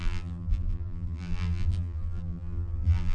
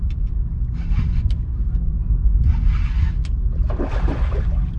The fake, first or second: first